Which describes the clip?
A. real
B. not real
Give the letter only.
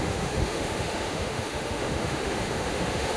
B